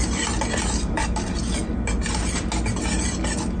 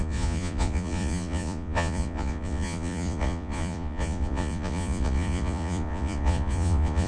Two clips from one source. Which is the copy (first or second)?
second